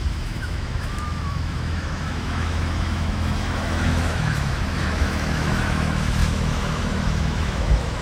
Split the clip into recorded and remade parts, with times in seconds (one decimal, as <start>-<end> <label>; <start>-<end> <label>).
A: 0.0-8.0 remade